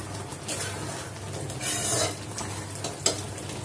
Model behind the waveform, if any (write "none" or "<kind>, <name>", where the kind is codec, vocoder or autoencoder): none